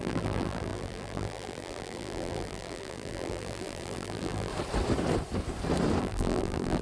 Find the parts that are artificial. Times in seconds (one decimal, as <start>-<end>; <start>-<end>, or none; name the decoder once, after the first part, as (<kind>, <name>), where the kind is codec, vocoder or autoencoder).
0.0-4.5 (vocoder, BigVGAN v2); 6.0-6.8